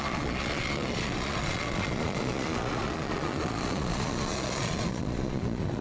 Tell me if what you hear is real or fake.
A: fake